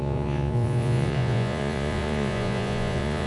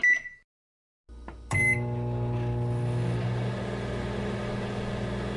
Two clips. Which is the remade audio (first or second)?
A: first